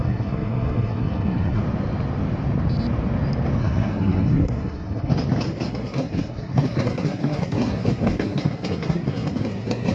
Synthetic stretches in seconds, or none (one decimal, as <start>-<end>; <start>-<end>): 0.0-1.6; 3.6-5.1; 5.7-9.9